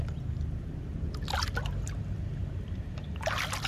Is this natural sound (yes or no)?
yes